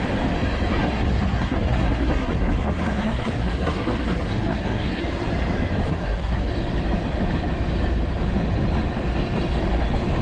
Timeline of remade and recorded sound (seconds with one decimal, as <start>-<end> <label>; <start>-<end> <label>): 0.0-0.8 recorded; 0.8-5.0 remade; 5.0-5.9 recorded; 5.9-6.5 remade; 6.5-10.2 recorded